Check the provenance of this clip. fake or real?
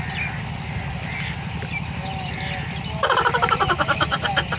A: real